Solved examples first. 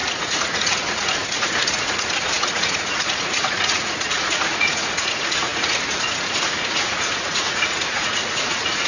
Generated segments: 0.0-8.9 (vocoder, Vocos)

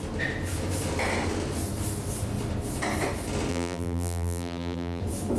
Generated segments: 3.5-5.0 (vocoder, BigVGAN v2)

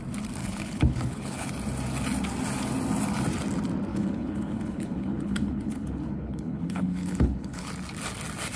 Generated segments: 0.4-1.5 (codec, HILCodec); 3.9-7.7

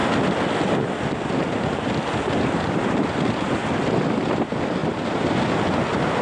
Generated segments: none

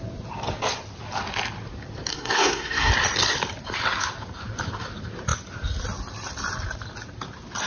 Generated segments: 2.1-2.9 (codec, SNAC)

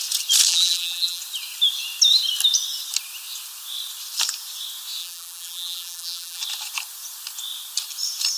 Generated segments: 0.5-1.2 (vocoder, BigVGAN v2); 5.0-6.4